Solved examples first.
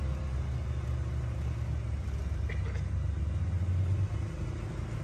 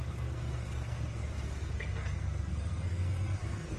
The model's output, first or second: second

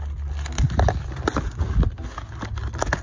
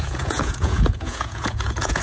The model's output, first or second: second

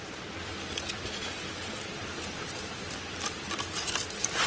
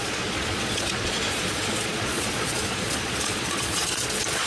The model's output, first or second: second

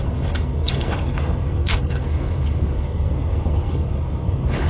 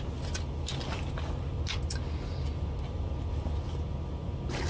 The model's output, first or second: first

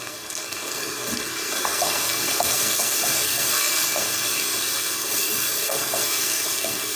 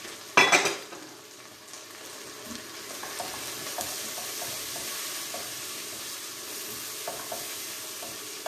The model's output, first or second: first